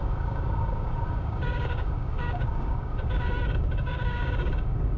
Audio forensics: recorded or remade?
remade